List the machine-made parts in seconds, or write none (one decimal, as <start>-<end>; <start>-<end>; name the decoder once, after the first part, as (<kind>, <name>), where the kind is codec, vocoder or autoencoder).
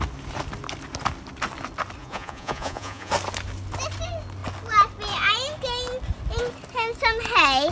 2.0-3.1 (vocoder, Vocos)